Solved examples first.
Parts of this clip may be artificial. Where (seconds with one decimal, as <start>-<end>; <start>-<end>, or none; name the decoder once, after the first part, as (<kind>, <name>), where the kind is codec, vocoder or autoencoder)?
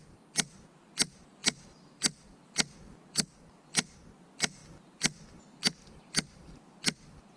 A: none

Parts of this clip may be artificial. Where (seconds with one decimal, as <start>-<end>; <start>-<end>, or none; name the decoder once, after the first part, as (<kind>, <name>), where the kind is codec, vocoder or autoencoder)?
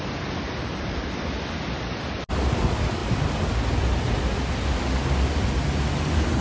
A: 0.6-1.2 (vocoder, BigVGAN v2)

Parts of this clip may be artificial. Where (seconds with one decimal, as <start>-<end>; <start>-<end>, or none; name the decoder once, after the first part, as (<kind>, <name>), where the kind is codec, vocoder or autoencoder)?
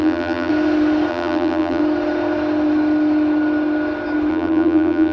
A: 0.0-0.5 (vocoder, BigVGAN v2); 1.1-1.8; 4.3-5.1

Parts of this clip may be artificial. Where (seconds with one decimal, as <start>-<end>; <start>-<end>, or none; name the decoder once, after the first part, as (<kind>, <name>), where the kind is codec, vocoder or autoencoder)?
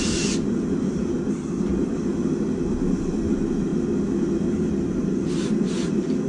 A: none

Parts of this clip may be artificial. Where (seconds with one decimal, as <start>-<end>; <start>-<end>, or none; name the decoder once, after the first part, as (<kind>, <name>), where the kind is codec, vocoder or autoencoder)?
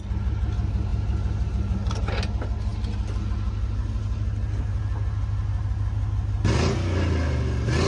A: none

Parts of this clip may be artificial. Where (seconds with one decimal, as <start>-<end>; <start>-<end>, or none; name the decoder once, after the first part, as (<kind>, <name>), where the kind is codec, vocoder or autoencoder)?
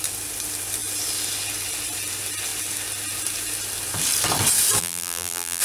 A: 4.8-5.6 (vocoder, BigVGAN v2)